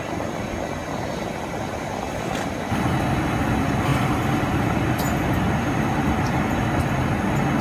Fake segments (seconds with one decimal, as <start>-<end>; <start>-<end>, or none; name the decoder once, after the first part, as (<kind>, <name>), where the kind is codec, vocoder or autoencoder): 3.9-6.6 (vocoder, BigVGAN v2)